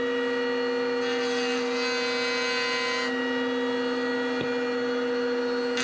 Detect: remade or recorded recorded